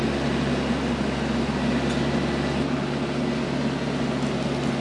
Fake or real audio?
real